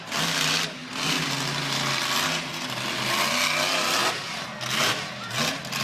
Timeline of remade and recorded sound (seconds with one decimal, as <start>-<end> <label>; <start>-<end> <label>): 0.0-5.8 recorded

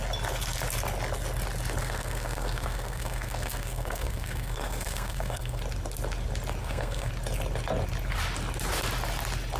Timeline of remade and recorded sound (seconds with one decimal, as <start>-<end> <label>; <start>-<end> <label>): 0.0-1.8 recorded; 1.8-5.6 remade; 5.6-6.6 recorded; 6.6-7.1 remade; 7.1-9.6 recorded